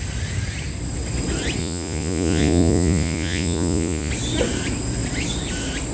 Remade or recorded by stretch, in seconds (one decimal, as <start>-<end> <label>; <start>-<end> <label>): 0.0-1.6 recorded; 1.6-4.1 remade; 4.1-5.9 recorded